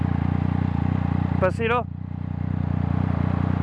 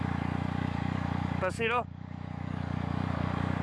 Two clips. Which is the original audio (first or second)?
first